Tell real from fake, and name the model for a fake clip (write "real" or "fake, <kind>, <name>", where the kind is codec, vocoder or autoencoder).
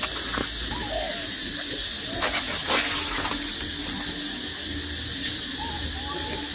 real